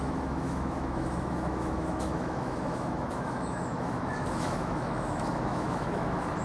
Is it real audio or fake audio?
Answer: fake